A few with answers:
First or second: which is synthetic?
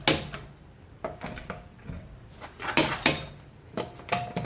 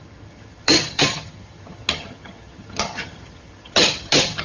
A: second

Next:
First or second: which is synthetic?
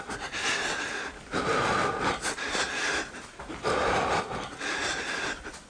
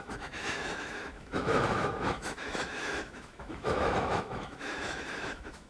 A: second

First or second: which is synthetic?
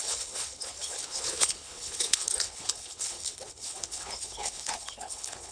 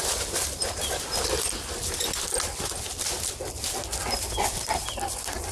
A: first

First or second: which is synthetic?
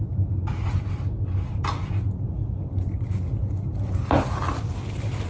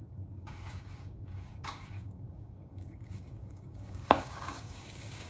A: second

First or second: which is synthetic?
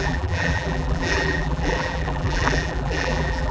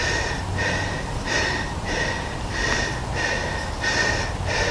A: first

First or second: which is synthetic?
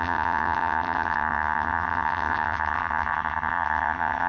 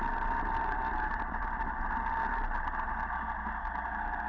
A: first